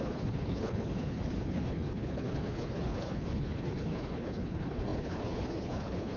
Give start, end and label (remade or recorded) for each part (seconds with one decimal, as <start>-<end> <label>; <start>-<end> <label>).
0.0-6.2 remade